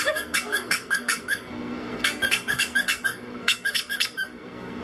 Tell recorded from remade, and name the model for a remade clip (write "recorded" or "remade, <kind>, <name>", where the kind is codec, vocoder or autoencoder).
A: remade, codec, SNAC